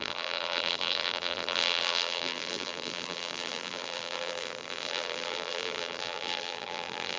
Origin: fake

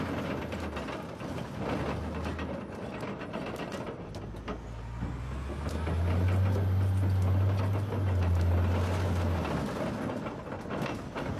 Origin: real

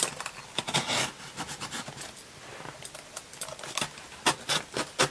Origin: real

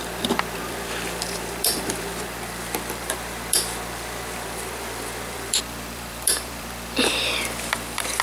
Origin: fake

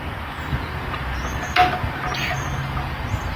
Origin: real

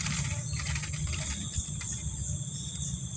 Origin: real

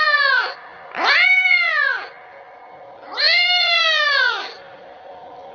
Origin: real